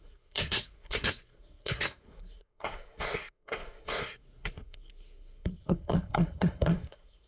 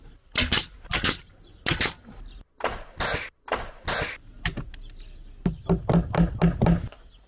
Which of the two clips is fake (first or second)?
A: first